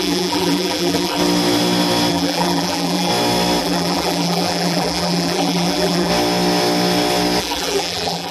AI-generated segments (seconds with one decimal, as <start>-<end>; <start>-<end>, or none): 0.0-1.2; 2.1-3.1; 3.6-6.1; 7.4-8.3